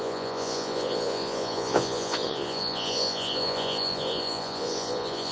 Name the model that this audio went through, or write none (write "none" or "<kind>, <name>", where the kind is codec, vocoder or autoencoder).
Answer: vocoder, Vocos